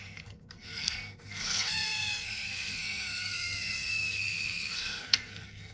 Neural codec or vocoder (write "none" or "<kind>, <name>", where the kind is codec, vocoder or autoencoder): codec, SNAC